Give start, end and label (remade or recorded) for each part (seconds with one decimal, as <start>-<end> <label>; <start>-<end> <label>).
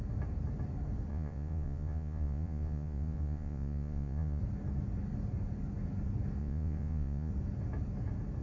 0.0-1.1 recorded; 1.1-4.4 remade; 4.4-6.4 recorded; 6.4-7.3 remade; 7.3-8.4 recorded